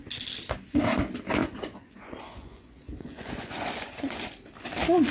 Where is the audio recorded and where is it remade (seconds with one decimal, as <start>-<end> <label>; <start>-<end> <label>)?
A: 0.0-1.4 recorded; 1.4-4.3 remade; 4.3-5.1 recorded